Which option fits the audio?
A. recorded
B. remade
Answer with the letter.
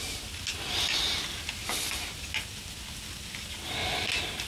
A